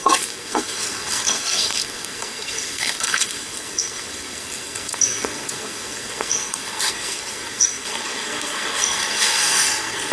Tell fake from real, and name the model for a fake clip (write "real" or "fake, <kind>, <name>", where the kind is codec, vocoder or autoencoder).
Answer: fake, codec, SNAC